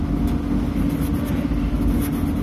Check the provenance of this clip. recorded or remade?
recorded